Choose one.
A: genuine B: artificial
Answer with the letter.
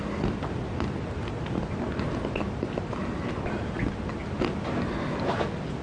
A